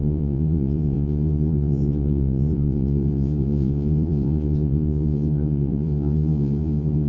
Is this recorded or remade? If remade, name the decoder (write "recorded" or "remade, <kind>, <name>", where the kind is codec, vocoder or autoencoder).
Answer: remade, vocoder, Vocos